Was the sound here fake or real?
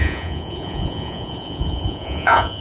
fake